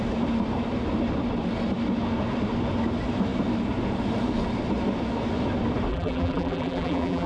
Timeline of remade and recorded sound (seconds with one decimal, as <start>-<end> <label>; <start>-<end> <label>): 0.0-5.9 recorded; 5.9-7.3 remade